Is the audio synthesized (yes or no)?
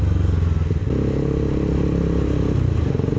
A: no